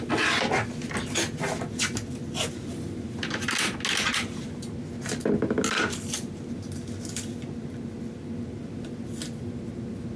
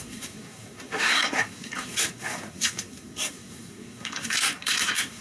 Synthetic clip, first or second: second